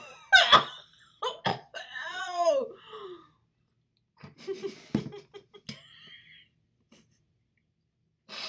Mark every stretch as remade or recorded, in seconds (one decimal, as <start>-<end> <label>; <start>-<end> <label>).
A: 0.0-1.5 recorded; 1.5-2.5 remade; 2.5-8.5 recorded